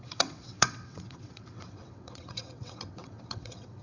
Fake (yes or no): yes